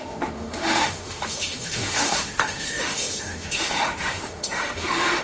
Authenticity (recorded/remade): remade